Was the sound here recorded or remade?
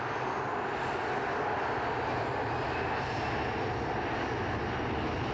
recorded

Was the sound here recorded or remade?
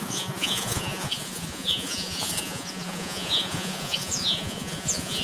remade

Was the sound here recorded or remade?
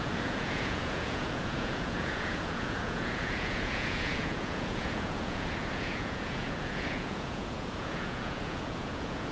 remade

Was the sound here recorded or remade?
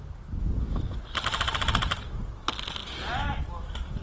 recorded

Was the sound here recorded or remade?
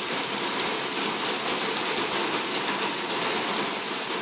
recorded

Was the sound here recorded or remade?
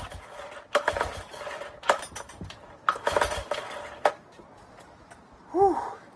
recorded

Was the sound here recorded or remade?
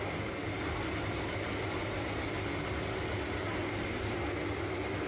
recorded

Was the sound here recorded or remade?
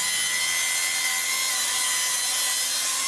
recorded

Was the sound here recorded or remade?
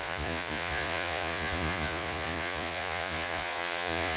remade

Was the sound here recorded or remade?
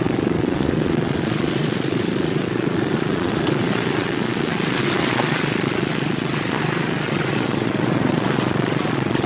remade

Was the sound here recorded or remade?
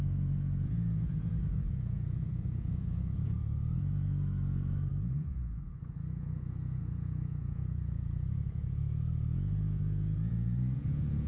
remade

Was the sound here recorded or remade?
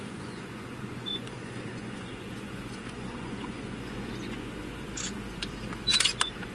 remade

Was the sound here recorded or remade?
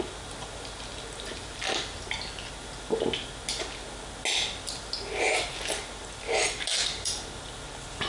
recorded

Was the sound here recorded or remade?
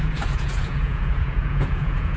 remade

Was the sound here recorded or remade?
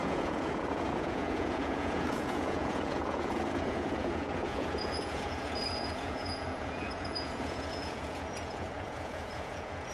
remade